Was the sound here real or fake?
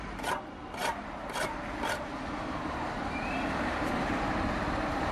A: fake